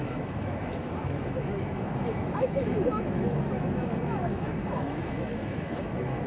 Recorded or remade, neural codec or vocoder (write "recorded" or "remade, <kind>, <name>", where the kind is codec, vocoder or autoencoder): remade, autoencoder, DAC-VAE